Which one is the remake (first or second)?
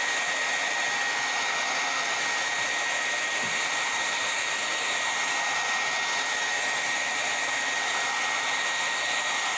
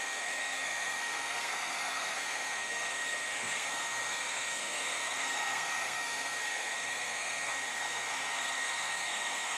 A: second